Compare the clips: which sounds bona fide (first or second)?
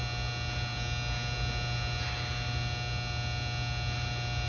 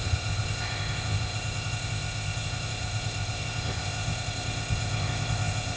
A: first